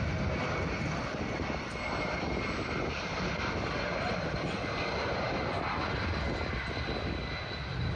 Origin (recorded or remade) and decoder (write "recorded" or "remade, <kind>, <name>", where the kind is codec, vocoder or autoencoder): recorded